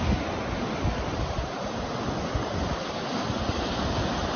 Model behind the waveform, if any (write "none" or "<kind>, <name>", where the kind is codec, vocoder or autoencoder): none